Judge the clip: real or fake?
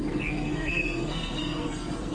fake